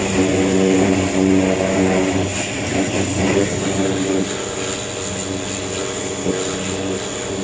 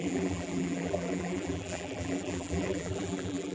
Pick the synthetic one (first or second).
second